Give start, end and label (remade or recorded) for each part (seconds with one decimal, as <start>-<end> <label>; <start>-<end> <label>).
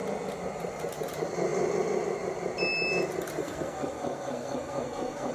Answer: 0.0-3.4 recorded; 3.4-5.3 remade